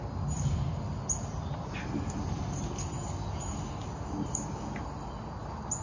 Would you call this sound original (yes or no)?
yes